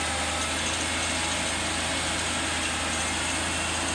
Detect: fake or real real